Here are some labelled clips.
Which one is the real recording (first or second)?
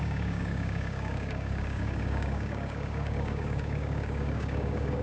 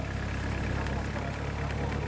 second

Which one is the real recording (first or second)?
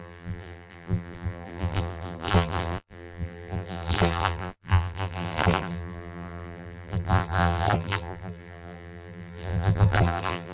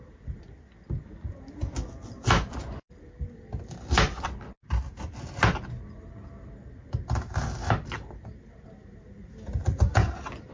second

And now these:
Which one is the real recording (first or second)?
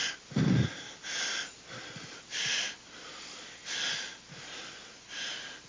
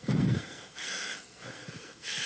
first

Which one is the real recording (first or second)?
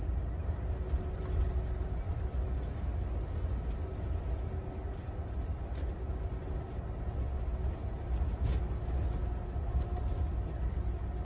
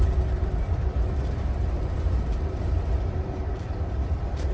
first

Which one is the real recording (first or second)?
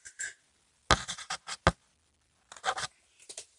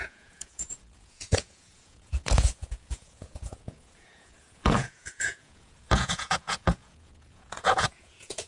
first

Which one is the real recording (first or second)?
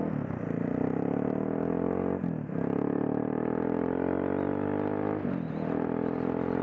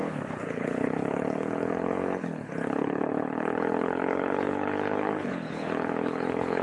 first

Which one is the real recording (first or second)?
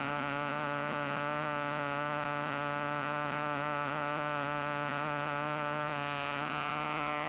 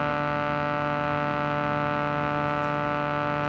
second